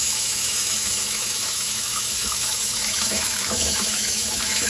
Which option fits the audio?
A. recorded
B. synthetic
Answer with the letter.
B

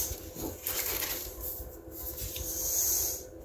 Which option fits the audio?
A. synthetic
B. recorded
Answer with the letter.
B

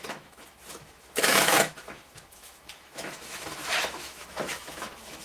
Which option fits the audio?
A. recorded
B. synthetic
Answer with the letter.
B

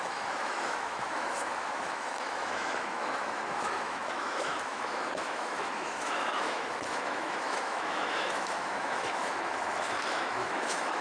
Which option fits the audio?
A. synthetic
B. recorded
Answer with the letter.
A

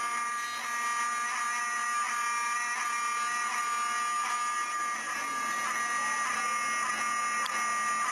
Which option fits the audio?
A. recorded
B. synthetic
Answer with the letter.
A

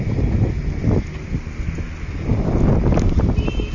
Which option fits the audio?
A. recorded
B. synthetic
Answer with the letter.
A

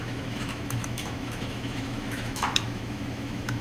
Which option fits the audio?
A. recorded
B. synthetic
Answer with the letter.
B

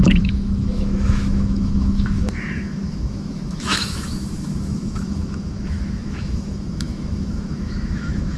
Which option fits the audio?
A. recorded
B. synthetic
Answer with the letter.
B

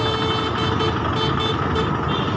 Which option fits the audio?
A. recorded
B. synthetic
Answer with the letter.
A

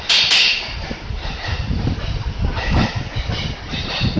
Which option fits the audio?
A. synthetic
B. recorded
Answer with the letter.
B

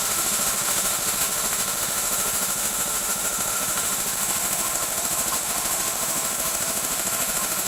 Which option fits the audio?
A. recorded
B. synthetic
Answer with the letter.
B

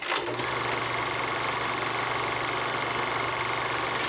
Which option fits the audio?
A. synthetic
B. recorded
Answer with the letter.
B